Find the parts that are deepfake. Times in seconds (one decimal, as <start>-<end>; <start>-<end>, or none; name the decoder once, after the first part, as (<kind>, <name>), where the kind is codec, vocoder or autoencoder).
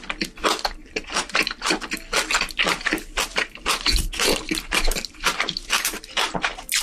0.8-1.6 (vocoder, BigVGAN v2); 3.3-6.8